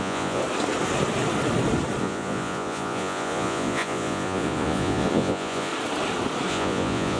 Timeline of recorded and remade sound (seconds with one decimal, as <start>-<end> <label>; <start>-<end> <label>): 0.0-0.4 remade; 0.4-2.0 recorded; 2.0-5.7 remade; 5.7-6.5 recorded; 6.5-7.2 remade